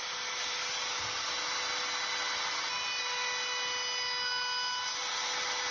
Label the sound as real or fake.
real